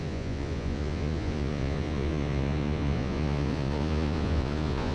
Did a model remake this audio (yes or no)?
yes